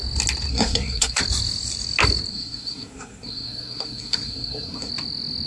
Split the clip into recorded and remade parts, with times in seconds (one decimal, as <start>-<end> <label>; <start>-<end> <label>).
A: 0.0-0.5 recorded; 0.5-1.2 remade; 1.2-2.3 recorded; 2.3-4.9 remade; 4.9-5.5 recorded